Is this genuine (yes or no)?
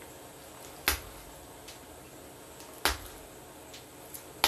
yes